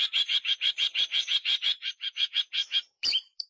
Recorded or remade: remade